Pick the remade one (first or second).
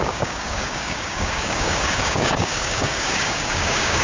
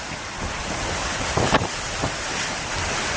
first